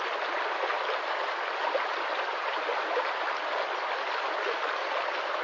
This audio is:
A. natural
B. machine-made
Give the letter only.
A